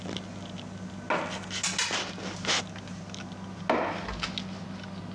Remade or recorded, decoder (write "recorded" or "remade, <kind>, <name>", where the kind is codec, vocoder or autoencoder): recorded